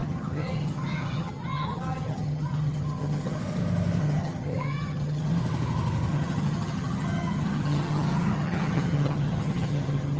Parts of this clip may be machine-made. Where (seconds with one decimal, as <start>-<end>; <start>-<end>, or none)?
0.0-3.4; 4.0-5.3; 6.1-10.2